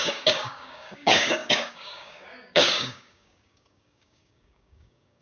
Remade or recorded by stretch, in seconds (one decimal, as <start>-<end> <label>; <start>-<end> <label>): 0.0-5.2 remade